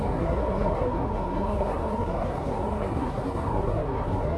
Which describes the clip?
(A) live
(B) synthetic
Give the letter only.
B